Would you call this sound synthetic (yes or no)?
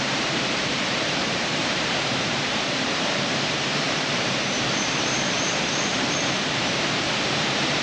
yes